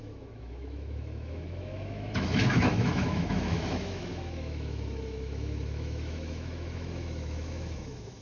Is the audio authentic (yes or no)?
no